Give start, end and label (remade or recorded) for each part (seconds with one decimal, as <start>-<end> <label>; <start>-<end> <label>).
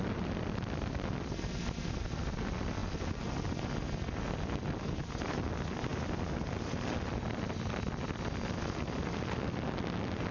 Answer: 0.0-10.3 recorded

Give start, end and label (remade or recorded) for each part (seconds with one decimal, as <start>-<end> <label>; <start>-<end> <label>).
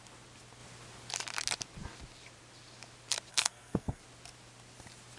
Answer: 0.0-3.3 recorded; 3.3-4.0 remade; 4.0-5.2 recorded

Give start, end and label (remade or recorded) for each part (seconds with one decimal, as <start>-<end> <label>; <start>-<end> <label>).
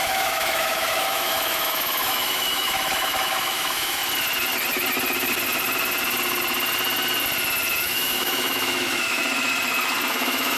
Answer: 0.0-4.0 remade; 4.0-7.8 recorded; 7.8-9.2 remade; 9.2-10.1 recorded; 10.1-10.6 remade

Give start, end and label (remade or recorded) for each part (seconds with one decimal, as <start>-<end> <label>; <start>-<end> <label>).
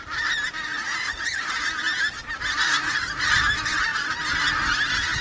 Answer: 0.0-0.7 recorded; 0.7-1.5 remade; 1.5-2.6 recorded; 2.6-3.3 remade; 3.3-5.2 recorded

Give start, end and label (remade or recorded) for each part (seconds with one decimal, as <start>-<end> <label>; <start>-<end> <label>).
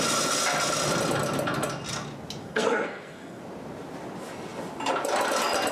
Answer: 0.0-2.4 recorded; 2.4-3.4 remade; 3.4-5.7 recorded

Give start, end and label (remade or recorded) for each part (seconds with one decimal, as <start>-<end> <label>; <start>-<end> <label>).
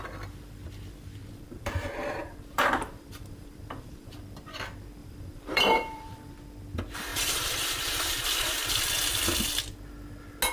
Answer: 0.0-1.2 recorded; 1.2-4.2 remade; 4.2-5.0 recorded; 5.0-6.3 remade; 6.3-7.1 recorded; 7.1-8.8 remade; 8.8-10.5 recorded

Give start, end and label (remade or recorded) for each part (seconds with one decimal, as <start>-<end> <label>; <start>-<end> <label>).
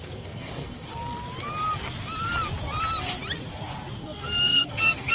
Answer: 0.0-0.9 remade; 0.9-4.0 recorded; 4.0-5.1 remade